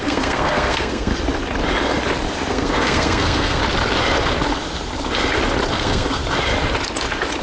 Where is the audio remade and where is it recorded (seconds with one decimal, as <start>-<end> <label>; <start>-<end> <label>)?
0.0-1.1 remade; 1.1-2.5 recorded; 2.5-3.6 remade; 3.6-5.7 recorded; 5.7-6.2 remade; 6.2-7.4 recorded